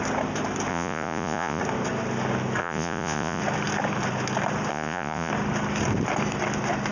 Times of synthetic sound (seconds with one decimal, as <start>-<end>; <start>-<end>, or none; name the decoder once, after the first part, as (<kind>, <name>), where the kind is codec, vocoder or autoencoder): 0.7-1.6 (vocoder, Vocos); 2.6-3.4; 4.7-5.3